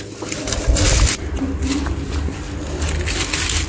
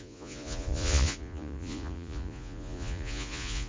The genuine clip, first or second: first